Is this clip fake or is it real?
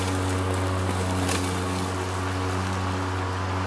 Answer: real